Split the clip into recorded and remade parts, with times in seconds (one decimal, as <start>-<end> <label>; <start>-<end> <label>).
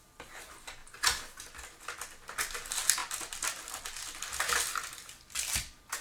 0.0-0.8 remade; 0.8-2.5 recorded; 2.5-3.0 remade; 3.0-4.9 recorded; 4.9-6.0 remade